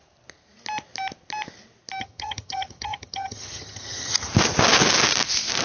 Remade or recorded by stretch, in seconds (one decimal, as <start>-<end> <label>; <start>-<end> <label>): 0.0-2.0 recorded; 2.0-4.3 remade; 4.3-5.6 recorded